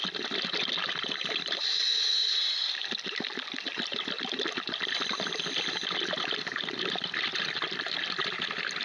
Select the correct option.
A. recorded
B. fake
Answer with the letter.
A